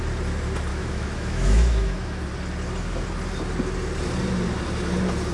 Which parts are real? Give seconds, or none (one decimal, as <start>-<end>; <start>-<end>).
0.0-0.7; 2.2-5.3